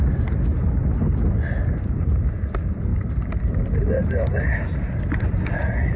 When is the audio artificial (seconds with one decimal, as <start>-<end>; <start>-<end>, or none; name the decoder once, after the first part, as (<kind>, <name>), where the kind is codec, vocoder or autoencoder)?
2.9-3.4 (vocoder, BigVGAN v2); 4.0-4.5